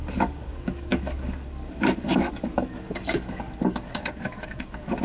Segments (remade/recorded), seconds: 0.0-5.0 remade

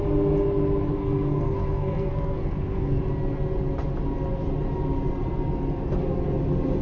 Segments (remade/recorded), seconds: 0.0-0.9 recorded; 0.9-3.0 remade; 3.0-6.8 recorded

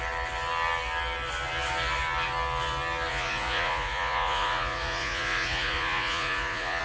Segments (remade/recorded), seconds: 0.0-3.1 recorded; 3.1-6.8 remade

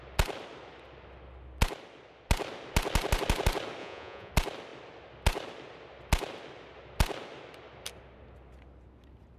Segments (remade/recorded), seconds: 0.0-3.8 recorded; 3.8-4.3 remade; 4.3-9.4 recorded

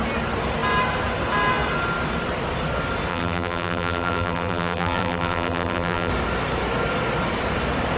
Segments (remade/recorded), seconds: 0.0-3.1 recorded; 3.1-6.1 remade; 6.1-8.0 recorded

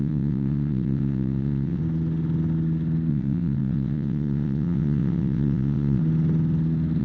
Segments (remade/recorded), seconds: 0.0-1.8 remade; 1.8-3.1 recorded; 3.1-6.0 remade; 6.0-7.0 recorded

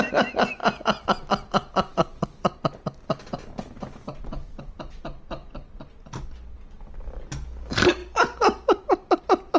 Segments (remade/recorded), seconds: 0.0-9.6 recorded